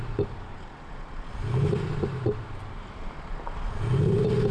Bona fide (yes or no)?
yes